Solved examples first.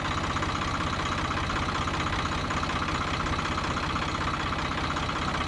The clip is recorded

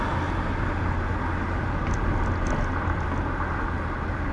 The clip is recorded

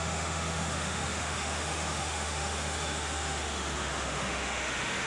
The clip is remade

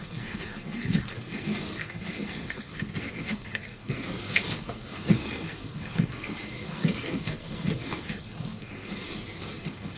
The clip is remade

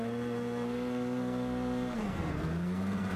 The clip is remade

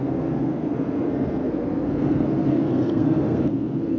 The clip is remade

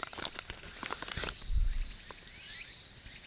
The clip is recorded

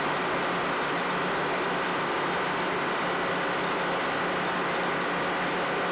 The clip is recorded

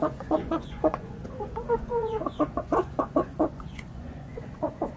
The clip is remade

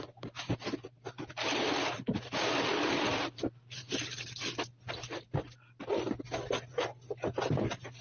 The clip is recorded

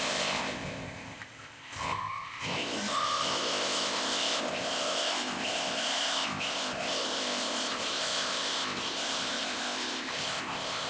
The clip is remade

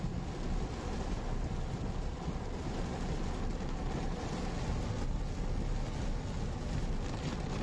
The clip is recorded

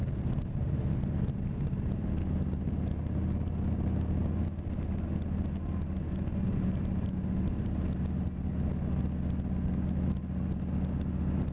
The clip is recorded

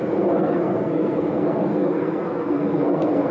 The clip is remade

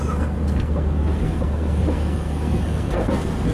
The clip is remade